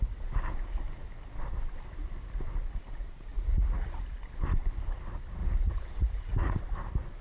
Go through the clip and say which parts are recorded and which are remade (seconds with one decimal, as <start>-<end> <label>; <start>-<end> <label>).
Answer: 0.0-3.3 recorded; 3.3-4.0 remade; 4.0-5.4 recorded; 5.4-6.6 remade; 6.6-7.2 recorded